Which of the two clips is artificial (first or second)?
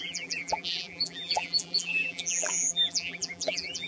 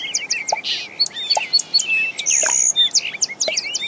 first